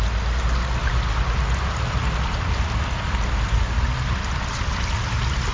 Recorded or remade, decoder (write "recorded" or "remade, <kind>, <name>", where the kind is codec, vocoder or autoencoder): recorded